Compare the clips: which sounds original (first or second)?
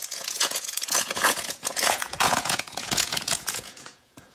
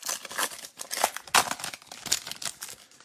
second